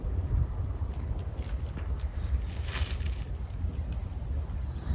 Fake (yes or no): no